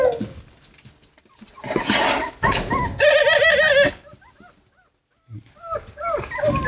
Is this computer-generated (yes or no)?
no